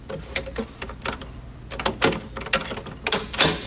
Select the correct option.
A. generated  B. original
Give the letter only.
B